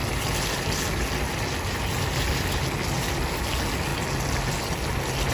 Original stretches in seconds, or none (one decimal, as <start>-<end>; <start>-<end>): 0.0-5.3